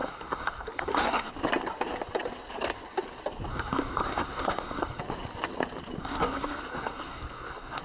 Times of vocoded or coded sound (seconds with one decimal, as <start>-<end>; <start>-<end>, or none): 0.0-1.3; 3.5-5.0; 6.0-7.8